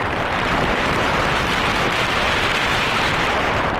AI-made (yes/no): yes